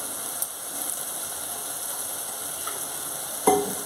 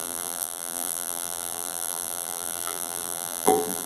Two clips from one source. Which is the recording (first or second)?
first